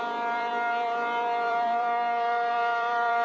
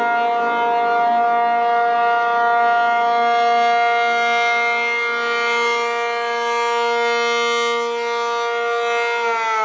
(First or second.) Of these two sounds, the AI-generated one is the first